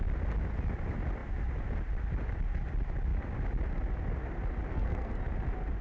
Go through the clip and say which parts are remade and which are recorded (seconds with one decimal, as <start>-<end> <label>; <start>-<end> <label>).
0.0-4.7 recorded; 4.7-5.2 remade; 5.2-5.8 recorded